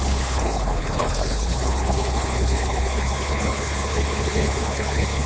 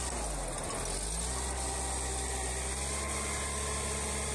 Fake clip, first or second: first